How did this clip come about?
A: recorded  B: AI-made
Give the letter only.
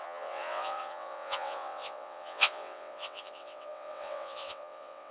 B